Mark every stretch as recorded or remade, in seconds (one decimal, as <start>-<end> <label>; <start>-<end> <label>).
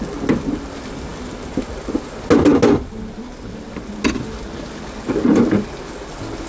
0.0-6.5 recorded